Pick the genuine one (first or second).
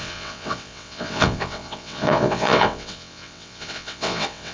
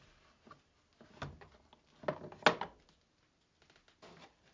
second